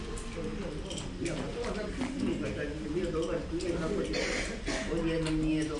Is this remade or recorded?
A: recorded